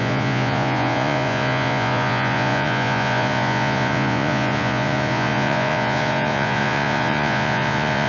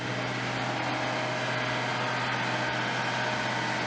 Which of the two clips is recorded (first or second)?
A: second